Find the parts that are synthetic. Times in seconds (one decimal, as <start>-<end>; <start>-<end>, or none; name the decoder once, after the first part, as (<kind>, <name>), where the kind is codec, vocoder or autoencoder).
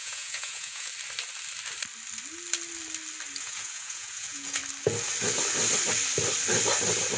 0.0-0.9 (vocoder, Vocos); 3.4-4.6